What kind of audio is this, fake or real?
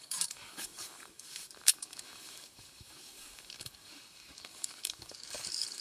fake